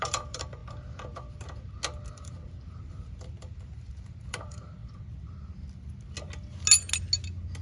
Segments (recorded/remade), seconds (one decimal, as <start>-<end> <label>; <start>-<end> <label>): 0.0-0.6 remade; 0.6-2.1 recorded; 2.1-4.8 remade; 4.8-7.6 recorded